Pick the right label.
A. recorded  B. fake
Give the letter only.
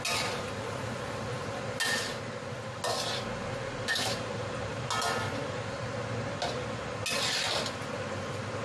A